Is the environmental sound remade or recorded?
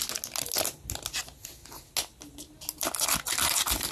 recorded